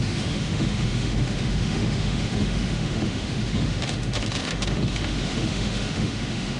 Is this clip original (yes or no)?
no